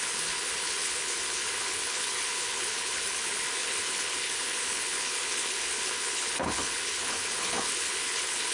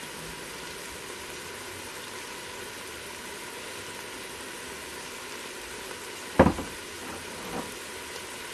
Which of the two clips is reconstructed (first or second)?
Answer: first